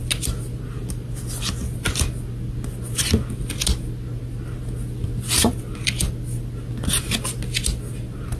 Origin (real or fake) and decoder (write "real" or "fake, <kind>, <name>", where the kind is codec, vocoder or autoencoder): real